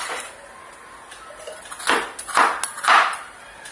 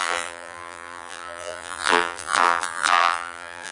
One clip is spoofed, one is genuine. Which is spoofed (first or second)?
second